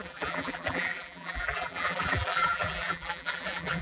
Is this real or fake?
fake